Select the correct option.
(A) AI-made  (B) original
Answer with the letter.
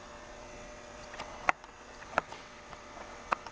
A